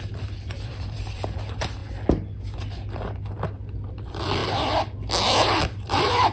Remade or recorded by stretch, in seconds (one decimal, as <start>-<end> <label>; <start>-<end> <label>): 0.0-1.8 remade; 1.8-4.0 recorded; 4.0-4.4 remade; 4.4-5.6 recorded; 5.6-6.3 remade